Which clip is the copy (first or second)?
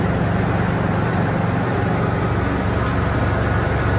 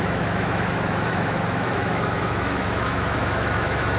second